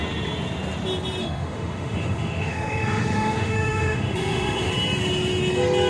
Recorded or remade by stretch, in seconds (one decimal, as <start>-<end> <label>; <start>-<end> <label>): 0.0-1.2 recorded; 1.2-4.7 remade; 4.7-5.9 recorded